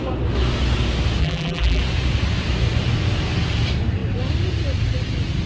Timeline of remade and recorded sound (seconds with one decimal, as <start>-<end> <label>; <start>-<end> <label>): 0.0-1.2 recorded; 1.2-1.8 remade; 1.8-5.5 recorded